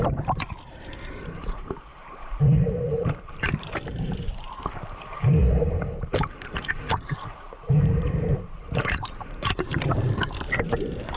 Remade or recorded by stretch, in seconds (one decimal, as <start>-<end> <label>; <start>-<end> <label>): 0.0-11.2 remade